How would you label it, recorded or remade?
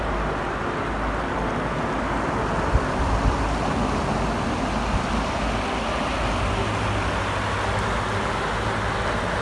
recorded